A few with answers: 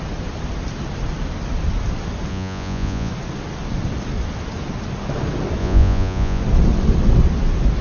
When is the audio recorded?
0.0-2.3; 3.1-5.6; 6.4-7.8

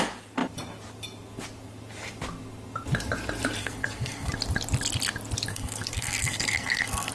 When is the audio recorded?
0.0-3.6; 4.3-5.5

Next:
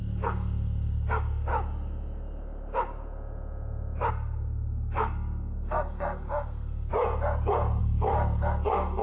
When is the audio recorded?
1.5-4.1; 6.9-7.8